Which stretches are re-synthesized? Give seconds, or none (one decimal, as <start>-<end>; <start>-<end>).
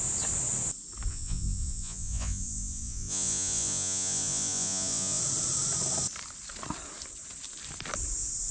1.1-5.2